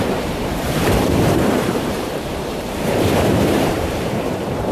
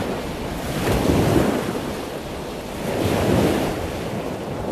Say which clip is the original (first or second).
second